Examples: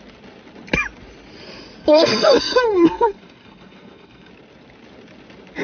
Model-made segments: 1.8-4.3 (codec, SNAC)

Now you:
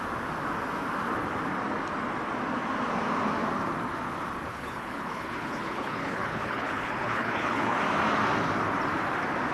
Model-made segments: 4.5-7.8 (codec, HILCodec)

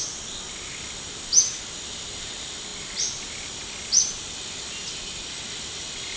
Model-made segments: none